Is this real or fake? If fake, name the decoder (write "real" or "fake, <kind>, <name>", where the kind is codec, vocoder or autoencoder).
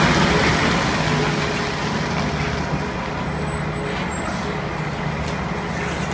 real